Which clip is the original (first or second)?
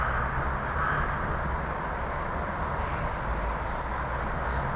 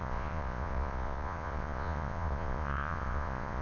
first